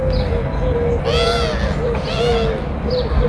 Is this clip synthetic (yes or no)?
no